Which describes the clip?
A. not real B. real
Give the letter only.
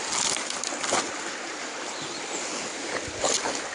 B